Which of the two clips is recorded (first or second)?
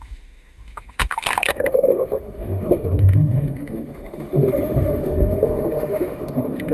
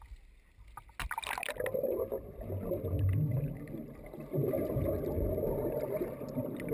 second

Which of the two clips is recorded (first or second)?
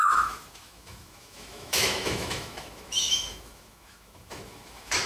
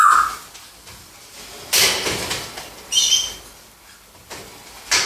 second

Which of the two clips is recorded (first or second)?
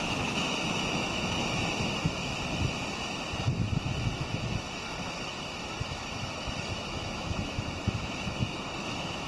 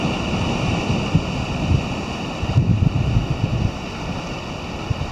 second